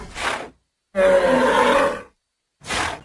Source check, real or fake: real